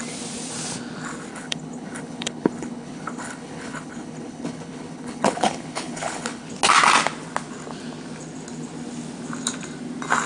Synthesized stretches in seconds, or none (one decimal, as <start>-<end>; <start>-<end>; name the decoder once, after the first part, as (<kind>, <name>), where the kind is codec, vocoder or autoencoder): 1.3-6.5 (codec, HILCodec)